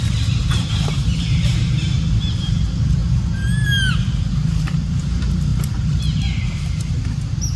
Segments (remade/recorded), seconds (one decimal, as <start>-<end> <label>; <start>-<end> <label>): 0.0-3.0 remade; 3.0-3.9 recorded; 3.9-7.6 remade